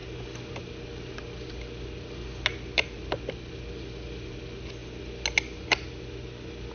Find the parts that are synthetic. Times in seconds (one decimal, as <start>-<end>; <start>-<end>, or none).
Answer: none

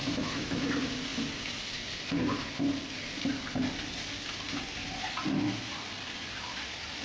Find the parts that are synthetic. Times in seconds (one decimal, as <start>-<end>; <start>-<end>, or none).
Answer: 0.0-0.6

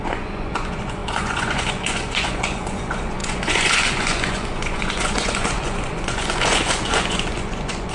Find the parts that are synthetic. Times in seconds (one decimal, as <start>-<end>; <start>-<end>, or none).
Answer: 0.0-7.9

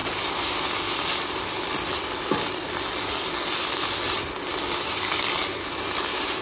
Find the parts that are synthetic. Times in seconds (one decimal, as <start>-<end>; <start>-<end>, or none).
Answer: none

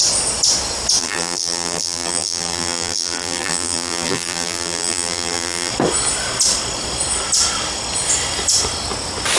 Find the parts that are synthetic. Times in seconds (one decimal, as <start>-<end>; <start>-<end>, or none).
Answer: 1.0-5.7

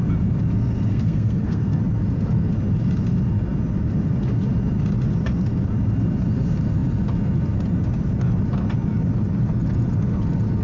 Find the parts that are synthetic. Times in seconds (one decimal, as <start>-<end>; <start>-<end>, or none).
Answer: 0.9-1.8